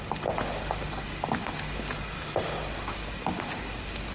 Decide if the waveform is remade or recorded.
recorded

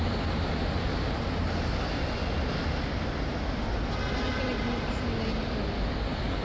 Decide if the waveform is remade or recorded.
recorded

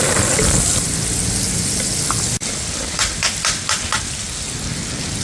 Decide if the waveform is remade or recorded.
recorded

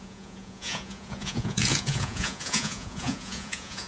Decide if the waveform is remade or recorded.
remade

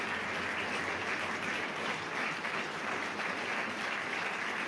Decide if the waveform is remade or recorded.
recorded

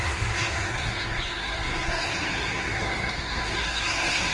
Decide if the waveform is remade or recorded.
remade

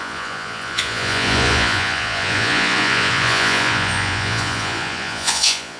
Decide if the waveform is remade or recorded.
remade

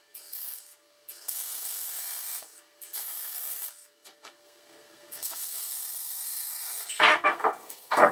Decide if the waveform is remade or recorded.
remade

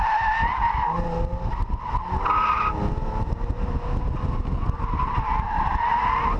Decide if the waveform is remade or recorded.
recorded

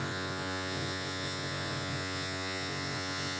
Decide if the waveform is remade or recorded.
remade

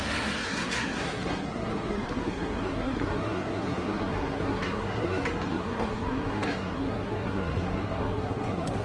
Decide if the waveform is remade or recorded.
remade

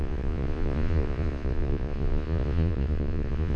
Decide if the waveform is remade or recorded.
remade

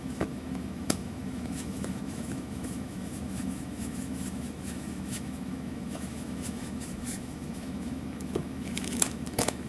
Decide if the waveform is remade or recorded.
remade